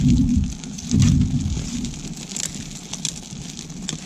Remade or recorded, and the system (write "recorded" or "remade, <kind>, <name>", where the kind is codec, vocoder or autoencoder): recorded